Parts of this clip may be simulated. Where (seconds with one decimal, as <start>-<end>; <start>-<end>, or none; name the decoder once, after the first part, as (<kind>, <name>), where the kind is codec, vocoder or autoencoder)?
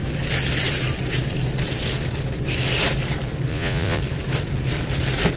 3.5-4.0 (vocoder, Vocos)